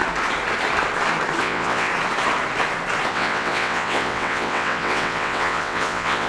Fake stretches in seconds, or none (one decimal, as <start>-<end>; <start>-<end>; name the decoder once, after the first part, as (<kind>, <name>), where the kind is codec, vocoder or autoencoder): 1.4-1.9 (vocoder, WaveNeXt); 3.1-6.3